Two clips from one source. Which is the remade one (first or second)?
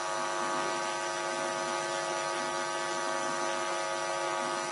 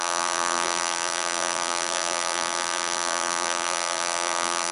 second